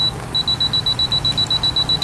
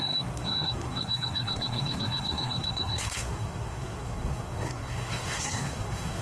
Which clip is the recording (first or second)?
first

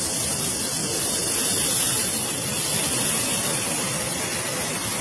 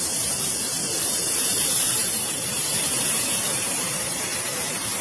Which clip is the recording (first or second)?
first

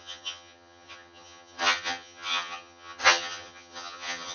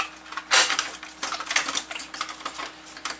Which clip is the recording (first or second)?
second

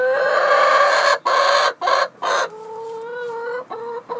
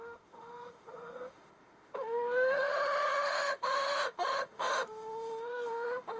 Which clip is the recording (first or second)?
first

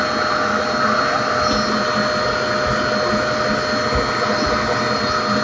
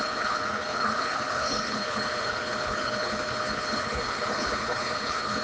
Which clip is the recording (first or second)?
first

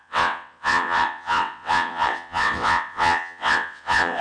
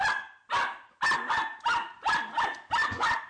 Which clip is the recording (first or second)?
second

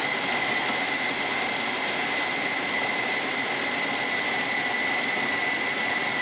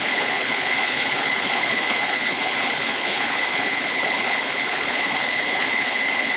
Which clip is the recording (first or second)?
first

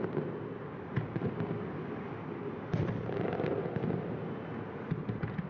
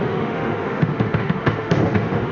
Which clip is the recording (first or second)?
first